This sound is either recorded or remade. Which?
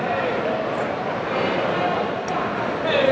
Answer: recorded